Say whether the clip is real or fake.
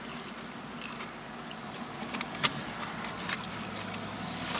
real